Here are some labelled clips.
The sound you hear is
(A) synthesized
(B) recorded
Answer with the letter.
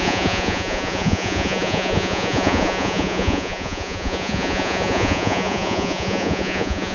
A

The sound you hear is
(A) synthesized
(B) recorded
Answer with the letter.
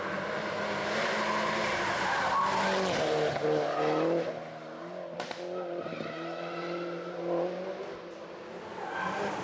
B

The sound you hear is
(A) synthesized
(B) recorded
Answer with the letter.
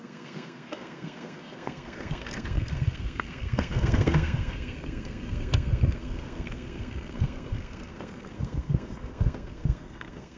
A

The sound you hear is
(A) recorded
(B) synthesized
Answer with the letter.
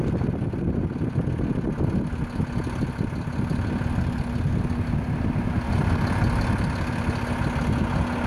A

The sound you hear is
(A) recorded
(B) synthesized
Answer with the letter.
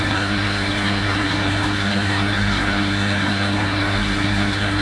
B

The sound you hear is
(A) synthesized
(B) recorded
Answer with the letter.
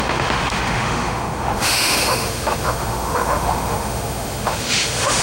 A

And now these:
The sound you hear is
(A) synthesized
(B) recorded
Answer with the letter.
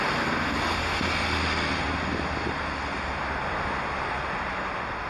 B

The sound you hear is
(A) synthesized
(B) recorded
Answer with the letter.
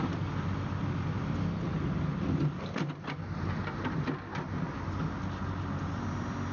B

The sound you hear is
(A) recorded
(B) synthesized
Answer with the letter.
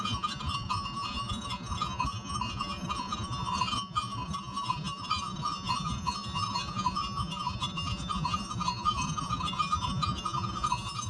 B